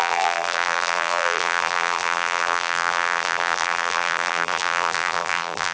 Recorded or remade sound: remade